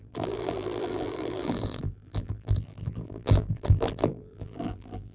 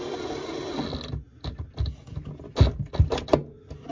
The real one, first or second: second